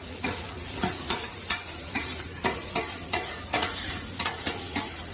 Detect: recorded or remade remade